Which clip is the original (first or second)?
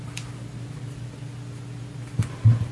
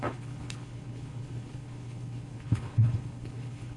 first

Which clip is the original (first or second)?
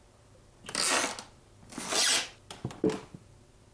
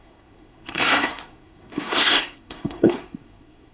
first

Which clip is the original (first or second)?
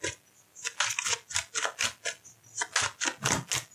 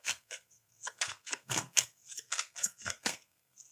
first